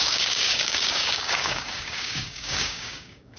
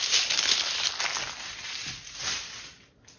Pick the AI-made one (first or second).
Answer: first